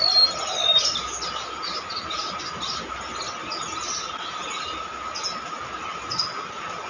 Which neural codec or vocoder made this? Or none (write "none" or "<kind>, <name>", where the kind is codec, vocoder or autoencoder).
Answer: none